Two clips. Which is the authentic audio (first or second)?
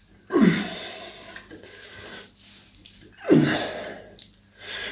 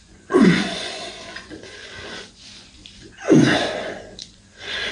first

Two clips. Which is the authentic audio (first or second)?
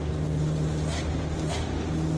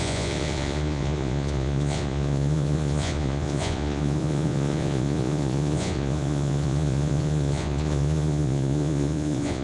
first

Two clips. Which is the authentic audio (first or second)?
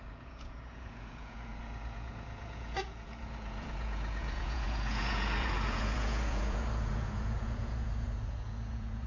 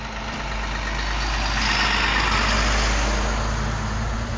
second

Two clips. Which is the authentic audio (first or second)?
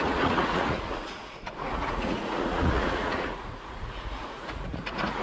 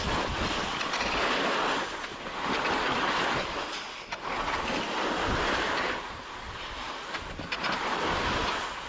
second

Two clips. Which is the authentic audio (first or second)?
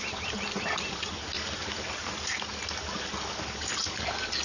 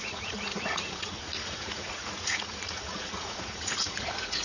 first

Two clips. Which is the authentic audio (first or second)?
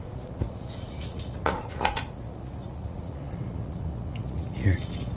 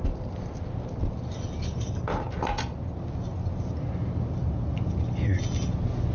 second